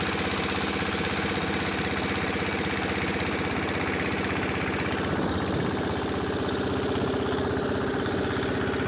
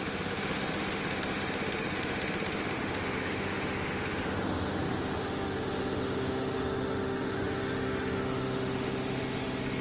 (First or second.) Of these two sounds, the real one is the first